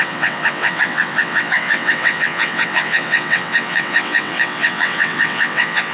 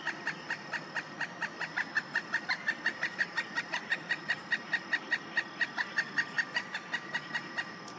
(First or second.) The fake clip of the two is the first